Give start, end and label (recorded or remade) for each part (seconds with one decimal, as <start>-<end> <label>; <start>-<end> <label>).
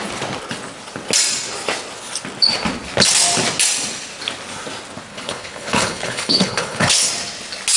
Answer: 0.0-5.1 recorded; 5.1-7.1 remade; 7.1-7.8 recorded